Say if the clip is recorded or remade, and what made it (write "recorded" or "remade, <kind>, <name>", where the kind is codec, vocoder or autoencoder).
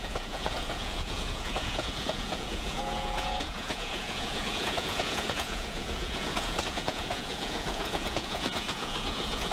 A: remade, vocoder, Vocos